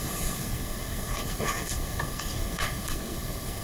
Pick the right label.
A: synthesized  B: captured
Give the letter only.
A